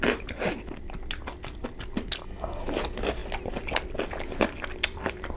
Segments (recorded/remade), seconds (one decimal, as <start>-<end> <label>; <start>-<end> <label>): 0.0-5.4 recorded